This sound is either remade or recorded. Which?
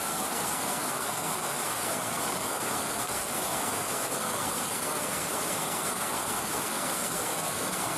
remade